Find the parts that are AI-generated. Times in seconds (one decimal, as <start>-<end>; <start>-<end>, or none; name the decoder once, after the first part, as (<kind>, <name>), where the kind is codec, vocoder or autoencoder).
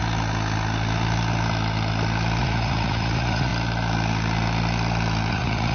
2.4-3.5 (vocoder, Vocos); 5.3-5.7